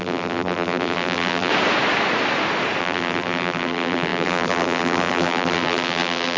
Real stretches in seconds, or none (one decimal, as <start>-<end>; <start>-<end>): 1.5-2.8

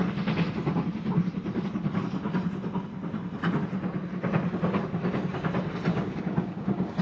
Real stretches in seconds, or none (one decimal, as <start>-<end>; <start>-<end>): 0.0-5.9

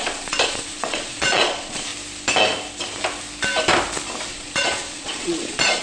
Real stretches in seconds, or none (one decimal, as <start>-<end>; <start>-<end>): 1.9-4.3

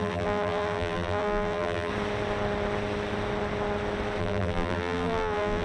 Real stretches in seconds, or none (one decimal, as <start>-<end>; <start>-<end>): 1.9-4.2

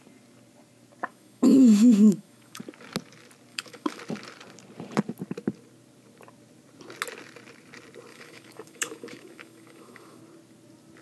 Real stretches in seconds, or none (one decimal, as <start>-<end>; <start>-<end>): 0.0-1.1; 2.6-3.5; 4.0-8.1; 10.2-11.0